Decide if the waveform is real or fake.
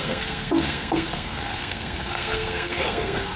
fake